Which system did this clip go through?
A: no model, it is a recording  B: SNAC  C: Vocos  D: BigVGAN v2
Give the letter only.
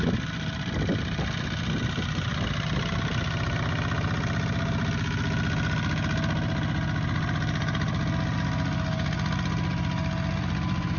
A